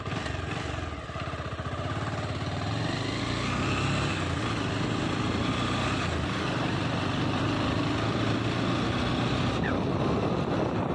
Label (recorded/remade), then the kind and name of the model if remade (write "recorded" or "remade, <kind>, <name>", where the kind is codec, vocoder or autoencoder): recorded